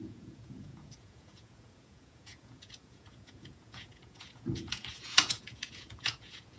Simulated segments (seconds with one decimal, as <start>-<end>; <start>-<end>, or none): 0.0-6.6